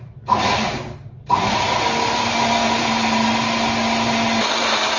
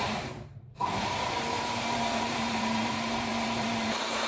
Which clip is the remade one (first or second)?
second